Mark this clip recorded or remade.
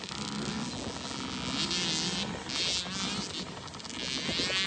recorded